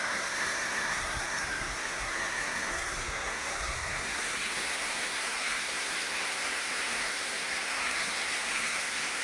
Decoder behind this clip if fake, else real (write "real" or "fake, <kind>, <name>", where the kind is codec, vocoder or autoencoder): fake, codec, SNAC